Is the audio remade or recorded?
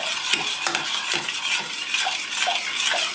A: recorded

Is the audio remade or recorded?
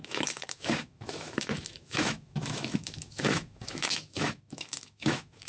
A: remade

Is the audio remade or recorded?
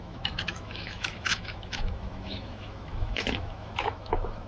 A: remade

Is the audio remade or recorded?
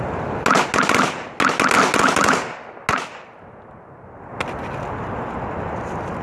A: recorded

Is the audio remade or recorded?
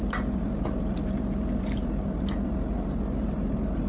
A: recorded